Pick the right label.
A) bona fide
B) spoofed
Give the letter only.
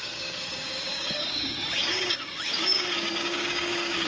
B